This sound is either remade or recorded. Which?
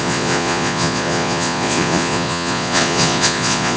remade